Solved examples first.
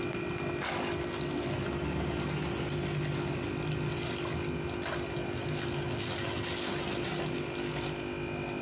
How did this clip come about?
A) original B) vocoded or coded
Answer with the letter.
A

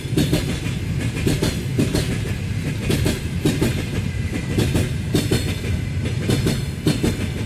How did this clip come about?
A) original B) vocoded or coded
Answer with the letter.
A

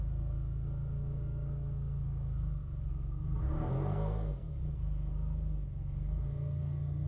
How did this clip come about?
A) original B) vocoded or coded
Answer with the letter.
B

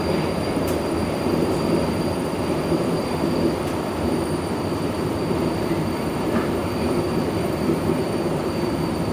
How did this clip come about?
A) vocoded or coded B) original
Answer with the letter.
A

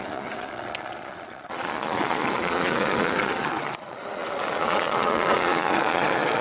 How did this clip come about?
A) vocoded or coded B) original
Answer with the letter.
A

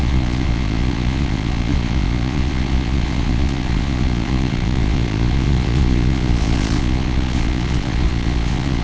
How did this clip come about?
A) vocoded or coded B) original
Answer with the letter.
A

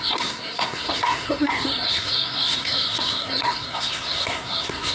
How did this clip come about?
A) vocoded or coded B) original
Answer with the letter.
A